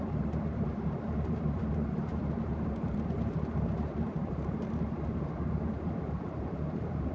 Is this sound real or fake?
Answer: fake